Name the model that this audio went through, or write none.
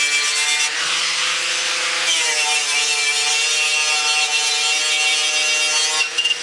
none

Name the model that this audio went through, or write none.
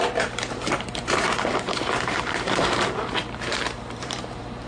vocoder, BigVGAN v2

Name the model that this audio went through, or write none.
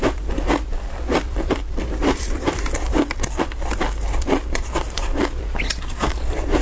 vocoder, BigVGAN v2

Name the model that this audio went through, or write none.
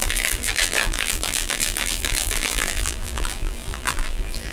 vocoder, BigVGAN v2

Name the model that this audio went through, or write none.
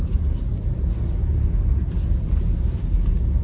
none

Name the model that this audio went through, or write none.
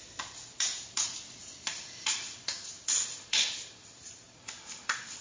vocoder, BigVGAN v2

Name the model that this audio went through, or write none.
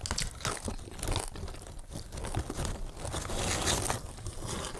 none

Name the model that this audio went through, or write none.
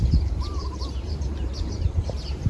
vocoder, BigVGAN v2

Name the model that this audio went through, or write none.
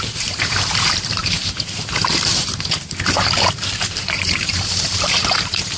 vocoder, BigVGAN v2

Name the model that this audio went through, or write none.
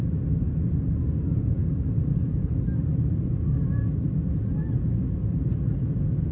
none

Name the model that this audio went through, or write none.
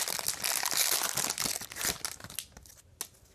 none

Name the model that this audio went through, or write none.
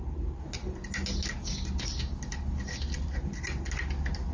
none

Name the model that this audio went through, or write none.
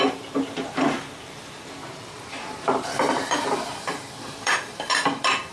vocoder, BigVGAN v2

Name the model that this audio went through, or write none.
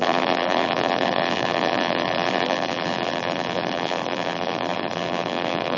vocoder, BigVGAN v2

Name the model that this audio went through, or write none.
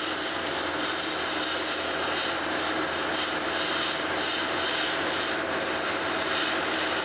vocoder, BigVGAN v2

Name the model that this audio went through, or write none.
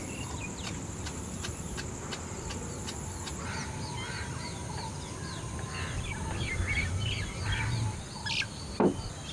none